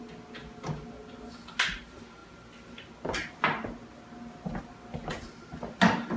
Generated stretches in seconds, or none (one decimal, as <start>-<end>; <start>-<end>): none